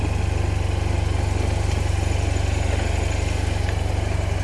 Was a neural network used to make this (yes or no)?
no